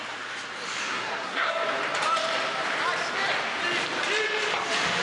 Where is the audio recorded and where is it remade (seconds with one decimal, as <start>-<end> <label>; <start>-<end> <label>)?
0.0-0.8 recorded; 0.8-1.5 remade; 1.5-5.0 recorded